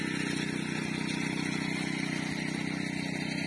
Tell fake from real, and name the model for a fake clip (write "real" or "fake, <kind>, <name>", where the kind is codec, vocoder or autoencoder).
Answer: real